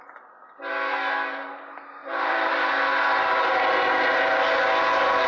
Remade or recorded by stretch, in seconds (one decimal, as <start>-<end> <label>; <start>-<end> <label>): 0.0-2.0 recorded; 2.0-2.7 remade; 2.7-5.3 recorded